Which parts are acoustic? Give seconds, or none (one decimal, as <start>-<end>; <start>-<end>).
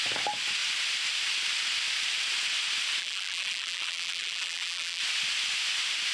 0.0-3.0; 5.0-6.1